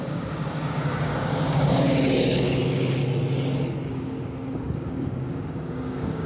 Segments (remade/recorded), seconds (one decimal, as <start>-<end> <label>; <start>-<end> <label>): 0.0-3.0 remade; 3.0-3.8 recorded; 3.8-6.3 remade